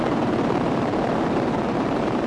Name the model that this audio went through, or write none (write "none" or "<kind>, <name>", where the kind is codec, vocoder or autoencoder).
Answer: vocoder, BigVGAN v2